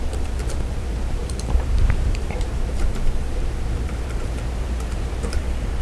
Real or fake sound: fake